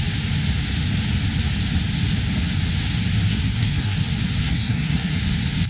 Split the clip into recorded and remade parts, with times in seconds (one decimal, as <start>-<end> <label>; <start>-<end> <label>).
0.0-3.3 recorded; 3.3-4.0 remade; 4.0-4.4 recorded; 4.4-5.2 remade; 5.2-5.7 recorded